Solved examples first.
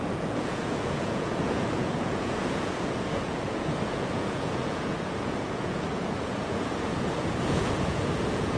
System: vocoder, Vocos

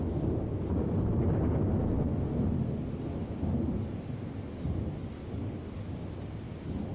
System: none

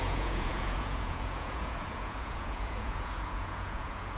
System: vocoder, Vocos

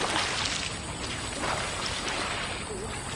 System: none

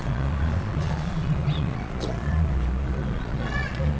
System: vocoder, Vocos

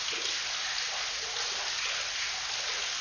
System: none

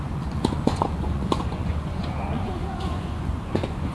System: vocoder, Vocos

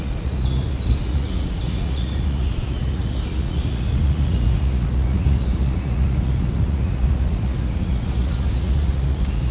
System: vocoder, Vocos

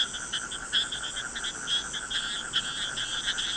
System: none